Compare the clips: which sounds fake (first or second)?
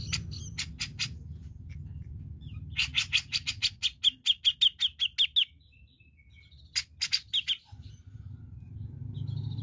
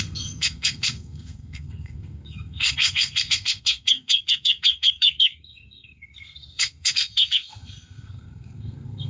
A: second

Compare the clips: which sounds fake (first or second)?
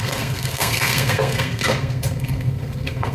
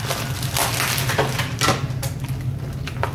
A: first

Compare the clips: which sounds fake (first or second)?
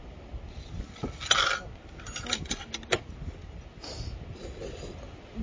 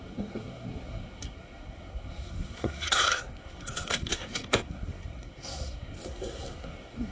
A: second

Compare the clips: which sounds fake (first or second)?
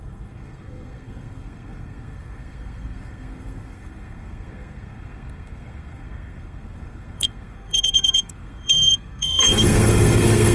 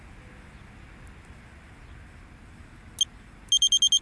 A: first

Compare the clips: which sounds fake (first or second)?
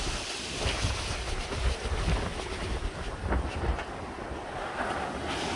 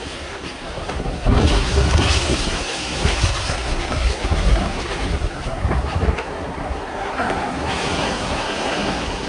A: second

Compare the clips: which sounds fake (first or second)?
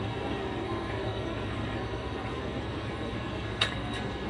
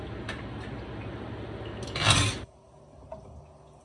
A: first